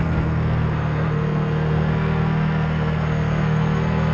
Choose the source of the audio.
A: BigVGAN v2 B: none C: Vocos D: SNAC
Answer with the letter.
D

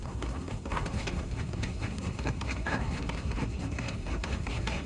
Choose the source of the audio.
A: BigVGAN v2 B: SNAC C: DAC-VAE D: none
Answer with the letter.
B